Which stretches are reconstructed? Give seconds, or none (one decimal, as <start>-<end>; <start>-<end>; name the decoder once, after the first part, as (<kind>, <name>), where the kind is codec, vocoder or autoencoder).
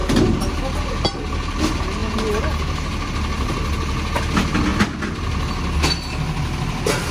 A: 0.0-1.1 (vocoder, BigVGAN v2)